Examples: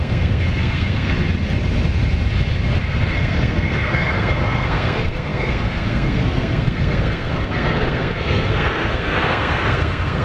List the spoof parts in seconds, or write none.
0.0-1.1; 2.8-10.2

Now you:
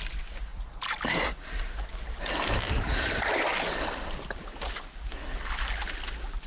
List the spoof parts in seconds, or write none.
none

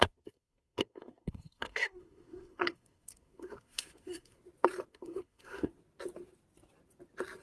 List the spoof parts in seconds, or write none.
0.0-4.4; 4.9-5.7

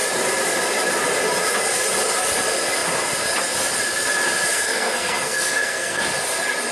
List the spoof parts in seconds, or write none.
4.5-6.0

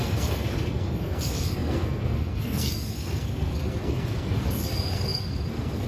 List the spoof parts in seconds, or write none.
0.0-5.9

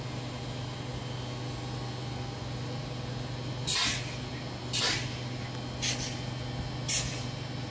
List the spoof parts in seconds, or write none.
none